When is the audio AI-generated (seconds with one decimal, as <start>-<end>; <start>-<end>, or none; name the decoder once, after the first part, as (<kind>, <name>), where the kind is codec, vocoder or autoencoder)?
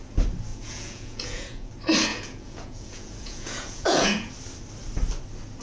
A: 0.5-1.7 (vocoder, Vocos); 2.1-4.3